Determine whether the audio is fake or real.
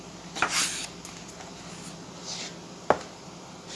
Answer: real